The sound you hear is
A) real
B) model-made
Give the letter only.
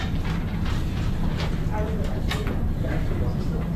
A